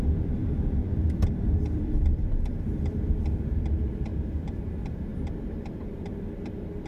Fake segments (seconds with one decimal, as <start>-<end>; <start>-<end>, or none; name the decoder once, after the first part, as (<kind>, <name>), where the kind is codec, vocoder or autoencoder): 0.0-4.1 (vocoder, BigVGAN v2); 4.6-5.1; 5.6-6.9